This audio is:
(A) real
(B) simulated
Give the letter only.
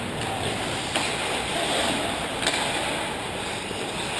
A